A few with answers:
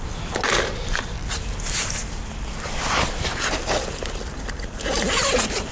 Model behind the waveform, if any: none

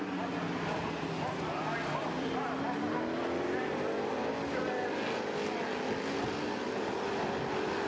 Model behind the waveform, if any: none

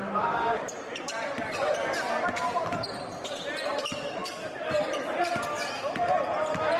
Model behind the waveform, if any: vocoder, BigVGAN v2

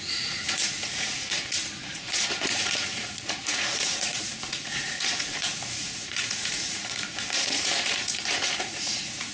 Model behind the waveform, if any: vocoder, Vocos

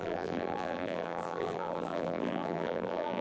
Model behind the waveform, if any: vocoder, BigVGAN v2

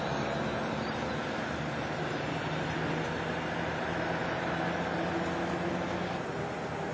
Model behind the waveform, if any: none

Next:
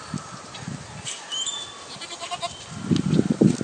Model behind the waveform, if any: none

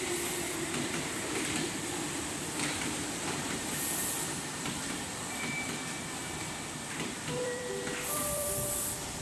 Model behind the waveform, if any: vocoder, BigVGAN v2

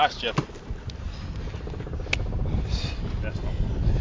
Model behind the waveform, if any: none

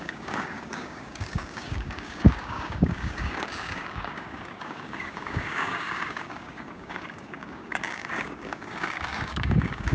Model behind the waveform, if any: codec, DAC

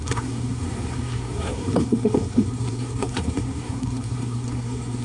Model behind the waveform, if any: codec, SNAC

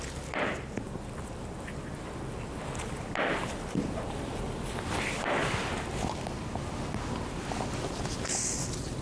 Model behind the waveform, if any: vocoder, BigVGAN v2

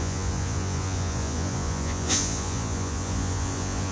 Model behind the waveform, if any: vocoder, Vocos